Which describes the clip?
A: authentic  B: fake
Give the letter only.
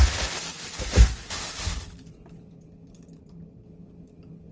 A